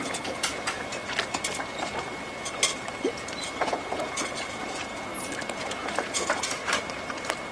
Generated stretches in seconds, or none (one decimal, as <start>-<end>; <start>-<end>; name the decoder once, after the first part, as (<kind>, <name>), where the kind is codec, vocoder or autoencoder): 0.0-0.9 (vocoder, Vocos); 3.6-5.1; 5.6-6.6